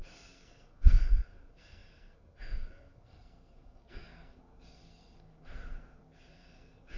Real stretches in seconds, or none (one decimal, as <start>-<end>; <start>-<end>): none